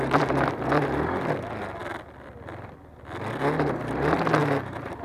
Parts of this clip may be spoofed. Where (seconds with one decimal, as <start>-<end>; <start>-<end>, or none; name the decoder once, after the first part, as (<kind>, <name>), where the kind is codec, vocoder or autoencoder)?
4.4-5.0 (vocoder, BigVGAN v2)